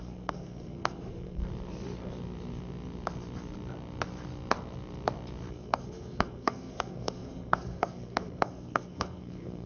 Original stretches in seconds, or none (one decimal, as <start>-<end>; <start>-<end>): 1.4-5.5